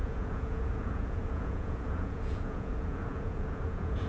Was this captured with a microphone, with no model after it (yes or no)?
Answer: no